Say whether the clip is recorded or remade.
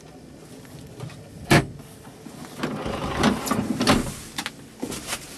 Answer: recorded